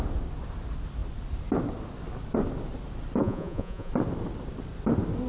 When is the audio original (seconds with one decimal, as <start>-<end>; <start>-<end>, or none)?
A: 0.0-3.2; 3.9-5.3